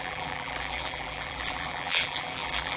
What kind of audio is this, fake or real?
fake